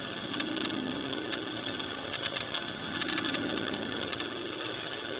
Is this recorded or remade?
remade